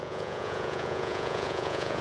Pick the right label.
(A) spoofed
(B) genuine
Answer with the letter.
A